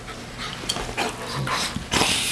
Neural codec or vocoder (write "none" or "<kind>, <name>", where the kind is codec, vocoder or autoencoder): none